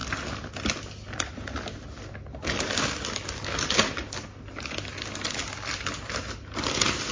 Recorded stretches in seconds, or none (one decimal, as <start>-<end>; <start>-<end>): 0.0-7.1